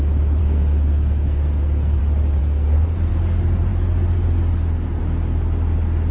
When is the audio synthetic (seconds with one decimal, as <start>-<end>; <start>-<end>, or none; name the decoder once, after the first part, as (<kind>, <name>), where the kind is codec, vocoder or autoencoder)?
0.4-2.0 (codec, SNAC); 2.4-3.1